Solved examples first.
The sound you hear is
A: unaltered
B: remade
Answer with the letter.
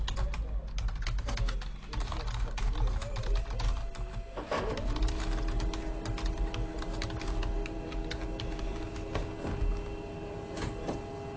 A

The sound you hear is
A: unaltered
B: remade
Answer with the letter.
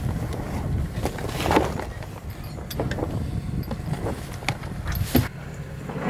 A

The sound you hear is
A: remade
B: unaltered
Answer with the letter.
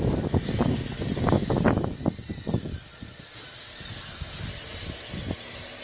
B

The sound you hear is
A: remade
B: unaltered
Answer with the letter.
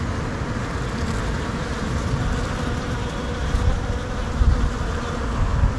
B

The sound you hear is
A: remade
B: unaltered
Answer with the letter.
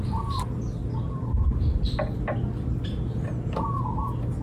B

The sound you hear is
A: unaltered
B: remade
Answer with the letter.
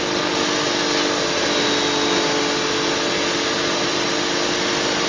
A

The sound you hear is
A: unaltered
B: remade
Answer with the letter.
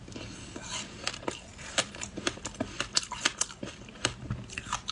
A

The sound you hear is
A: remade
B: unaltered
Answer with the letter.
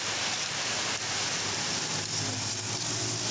B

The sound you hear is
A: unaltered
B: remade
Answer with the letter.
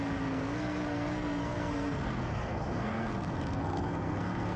B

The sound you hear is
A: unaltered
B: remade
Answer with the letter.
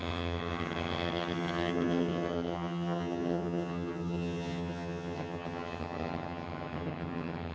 B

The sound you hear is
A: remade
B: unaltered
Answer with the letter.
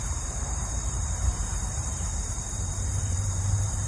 A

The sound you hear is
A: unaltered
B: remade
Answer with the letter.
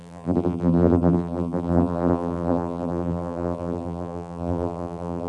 B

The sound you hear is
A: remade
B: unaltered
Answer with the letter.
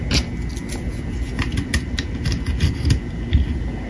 B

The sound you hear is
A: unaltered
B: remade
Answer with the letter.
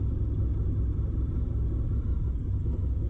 A